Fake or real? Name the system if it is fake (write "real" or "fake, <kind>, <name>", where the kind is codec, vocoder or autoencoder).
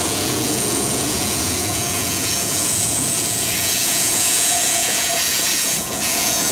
fake, vocoder, Vocos